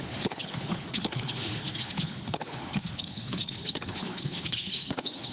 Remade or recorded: remade